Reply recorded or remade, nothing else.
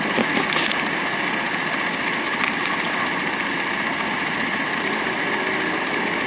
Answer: recorded